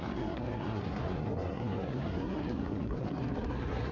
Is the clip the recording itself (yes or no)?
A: no